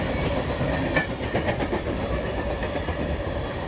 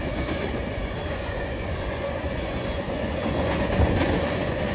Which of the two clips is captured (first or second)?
first